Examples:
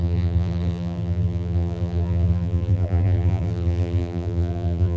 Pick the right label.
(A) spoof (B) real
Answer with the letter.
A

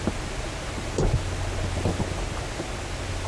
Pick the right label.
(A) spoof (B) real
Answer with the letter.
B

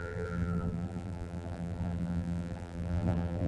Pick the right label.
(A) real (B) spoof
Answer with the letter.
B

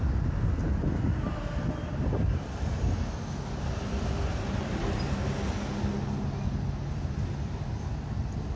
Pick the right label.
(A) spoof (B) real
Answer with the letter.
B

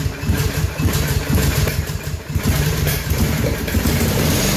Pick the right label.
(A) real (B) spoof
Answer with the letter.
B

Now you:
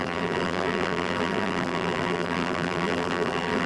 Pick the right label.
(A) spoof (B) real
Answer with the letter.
A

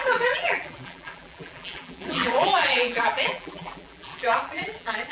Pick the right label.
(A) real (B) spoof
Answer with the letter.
B